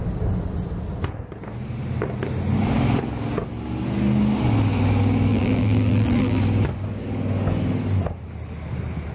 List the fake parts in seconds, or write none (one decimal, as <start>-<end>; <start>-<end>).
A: 5.3-6.4